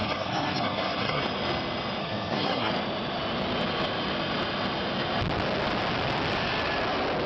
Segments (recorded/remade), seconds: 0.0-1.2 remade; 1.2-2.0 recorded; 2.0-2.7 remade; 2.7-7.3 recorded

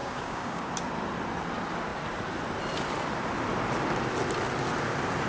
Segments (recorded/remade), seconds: 0.0-0.7 remade; 0.7-5.3 recorded

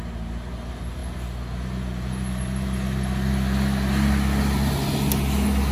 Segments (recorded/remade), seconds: 0.0-5.7 recorded

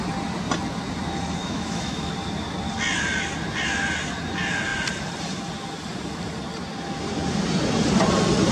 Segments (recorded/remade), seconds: 0.0-1.4 recorded; 1.4-2.1 remade; 2.1-8.5 recorded